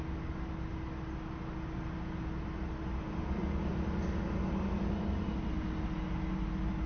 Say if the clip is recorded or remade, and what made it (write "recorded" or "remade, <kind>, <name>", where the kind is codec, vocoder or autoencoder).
recorded